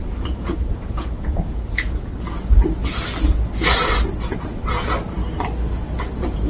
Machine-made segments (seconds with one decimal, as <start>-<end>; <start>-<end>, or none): 0.0-2.1; 6.0-6.5